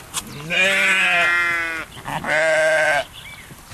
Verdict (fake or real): real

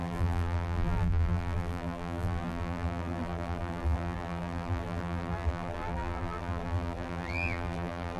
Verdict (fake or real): fake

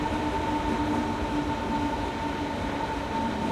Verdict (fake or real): real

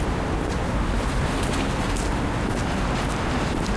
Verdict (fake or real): real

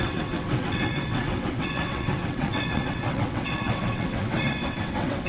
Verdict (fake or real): fake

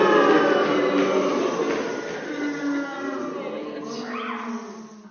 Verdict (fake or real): real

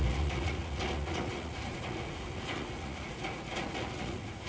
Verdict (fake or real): fake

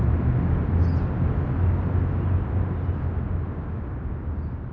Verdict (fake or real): real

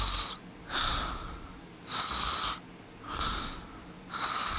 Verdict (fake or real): real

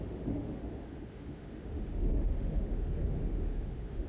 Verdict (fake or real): fake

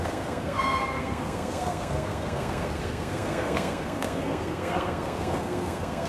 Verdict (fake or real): fake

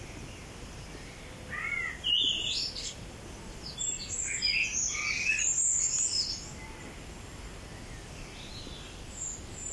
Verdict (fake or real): real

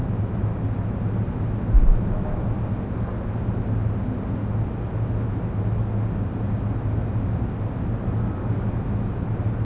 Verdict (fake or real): real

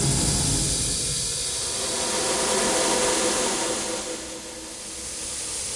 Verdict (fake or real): real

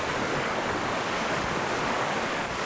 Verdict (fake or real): fake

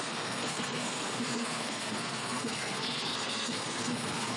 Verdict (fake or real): fake